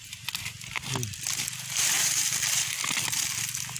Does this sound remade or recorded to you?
recorded